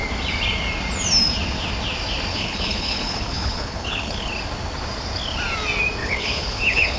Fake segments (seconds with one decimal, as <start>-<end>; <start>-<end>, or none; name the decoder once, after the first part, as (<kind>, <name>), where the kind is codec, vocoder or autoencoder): 2.3-4.3 (codec, HILCodec); 6.0-7.0